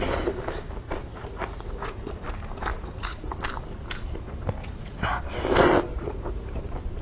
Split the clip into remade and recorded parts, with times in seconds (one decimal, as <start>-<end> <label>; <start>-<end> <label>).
0.0-1.1 recorded; 1.1-2.1 remade; 2.1-2.7 recorded; 2.7-3.3 remade; 3.3-4.6 recorded; 4.6-5.2 remade; 5.2-5.9 recorded; 5.9-6.6 remade; 6.6-7.0 recorded